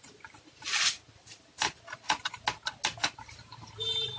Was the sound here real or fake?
real